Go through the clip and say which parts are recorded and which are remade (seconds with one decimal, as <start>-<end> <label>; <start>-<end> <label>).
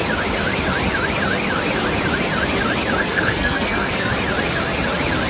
0.0-3.0 recorded; 3.0-4.1 remade; 4.1-5.3 recorded